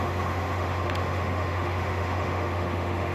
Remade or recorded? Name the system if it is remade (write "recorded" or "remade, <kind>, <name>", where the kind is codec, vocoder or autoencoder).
remade, autoencoder, DAC-VAE